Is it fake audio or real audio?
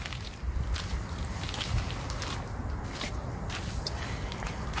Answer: real